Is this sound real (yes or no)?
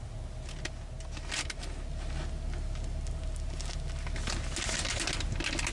yes